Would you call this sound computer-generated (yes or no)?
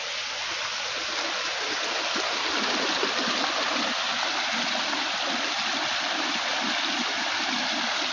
no